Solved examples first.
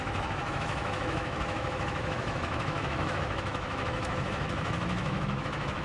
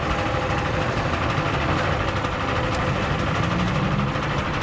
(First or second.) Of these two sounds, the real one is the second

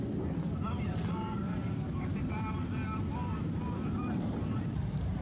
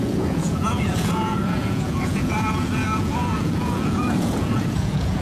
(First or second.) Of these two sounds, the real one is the first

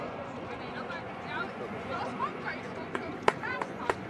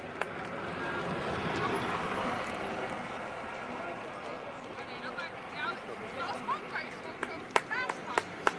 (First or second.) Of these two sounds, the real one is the second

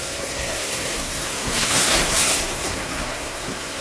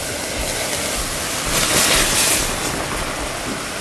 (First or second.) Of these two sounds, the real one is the second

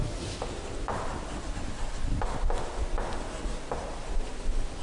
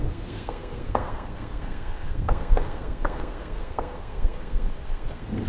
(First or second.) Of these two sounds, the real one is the first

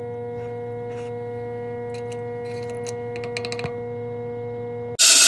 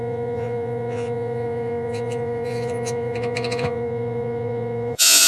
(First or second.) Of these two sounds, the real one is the first